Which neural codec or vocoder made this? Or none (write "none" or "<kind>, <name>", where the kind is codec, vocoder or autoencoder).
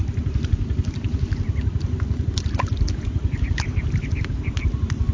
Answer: none